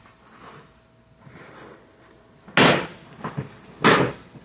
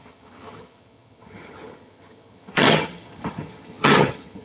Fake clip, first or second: second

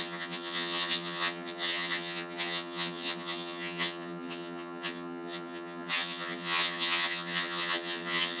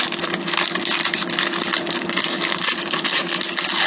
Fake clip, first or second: first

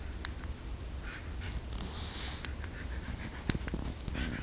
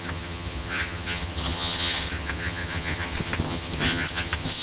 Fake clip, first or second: second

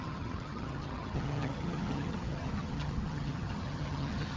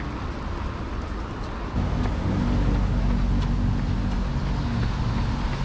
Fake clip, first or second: first